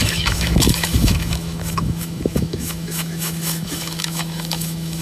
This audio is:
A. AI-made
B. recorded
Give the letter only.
A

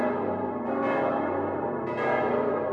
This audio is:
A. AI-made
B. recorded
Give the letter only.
A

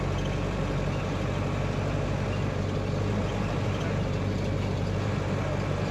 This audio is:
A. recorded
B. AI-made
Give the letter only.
A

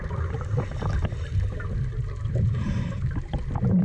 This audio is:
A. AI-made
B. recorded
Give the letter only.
A